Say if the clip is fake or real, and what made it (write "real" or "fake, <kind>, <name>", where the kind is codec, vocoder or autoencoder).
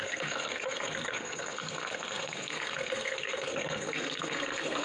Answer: fake, codec, SNAC